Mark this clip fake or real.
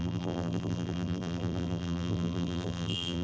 fake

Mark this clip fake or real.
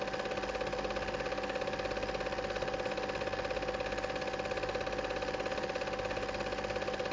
real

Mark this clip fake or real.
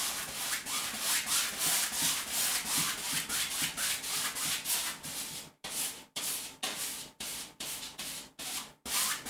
real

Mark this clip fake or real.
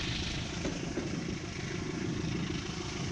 real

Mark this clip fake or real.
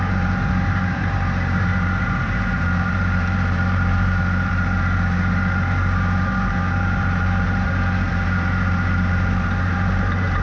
fake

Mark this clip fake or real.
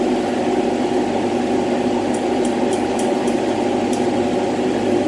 real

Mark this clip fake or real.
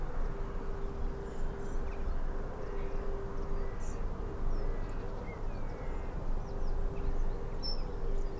real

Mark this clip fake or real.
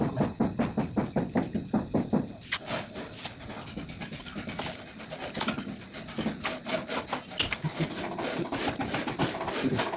real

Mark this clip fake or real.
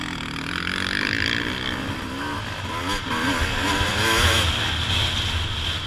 real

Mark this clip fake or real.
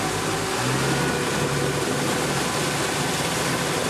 real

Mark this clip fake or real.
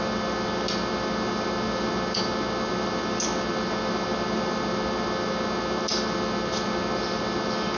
real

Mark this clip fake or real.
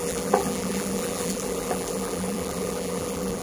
fake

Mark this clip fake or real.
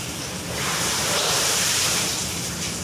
fake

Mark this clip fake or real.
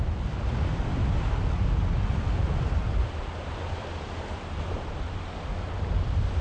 real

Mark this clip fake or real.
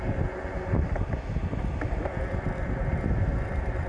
real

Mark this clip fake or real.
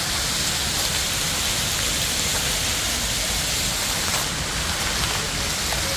real